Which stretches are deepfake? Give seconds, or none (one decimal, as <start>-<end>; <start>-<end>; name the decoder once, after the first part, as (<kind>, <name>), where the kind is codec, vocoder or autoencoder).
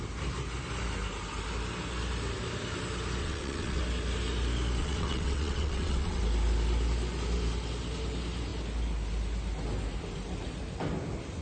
3.2-3.8 (vocoder, WaveNeXt); 4.8-6.2